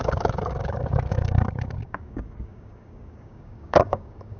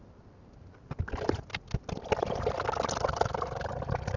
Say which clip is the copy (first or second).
first